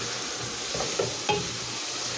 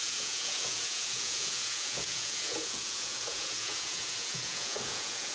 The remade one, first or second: second